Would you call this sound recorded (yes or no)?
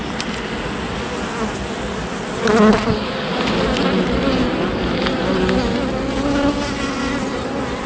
yes